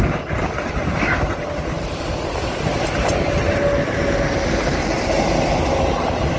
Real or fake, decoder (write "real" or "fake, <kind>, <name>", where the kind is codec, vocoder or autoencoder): real